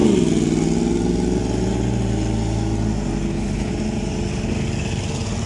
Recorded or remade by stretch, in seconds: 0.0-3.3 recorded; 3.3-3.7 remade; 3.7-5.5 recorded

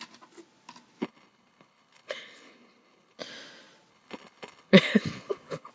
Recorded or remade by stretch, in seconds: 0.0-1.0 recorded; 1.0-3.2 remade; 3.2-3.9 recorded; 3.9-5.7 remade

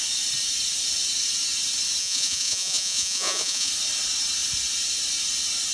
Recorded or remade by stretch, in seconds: 0.0-2.0 recorded; 2.0-3.7 remade; 3.7-5.7 recorded

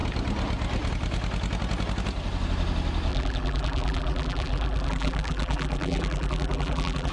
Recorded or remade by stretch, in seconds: 0.0-3.1 recorded; 3.1-7.1 remade

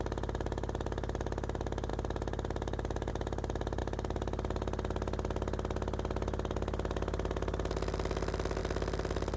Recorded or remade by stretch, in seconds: 0.0-9.4 recorded

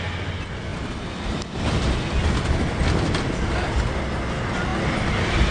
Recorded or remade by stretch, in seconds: 0.0-5.5 recorded

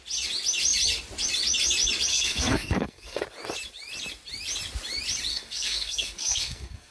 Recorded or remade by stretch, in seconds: 0.0-2.1 recorded; 2.1-3.2 remade; 3.2-5.3 recorded; 5.3-6.9 remade

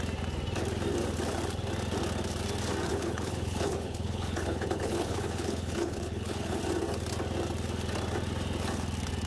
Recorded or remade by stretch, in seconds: 0.0-2.9 recorded; 2.9-6.6 remade; 6.6-9.3 recorded